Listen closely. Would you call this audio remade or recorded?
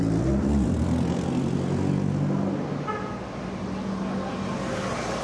recorded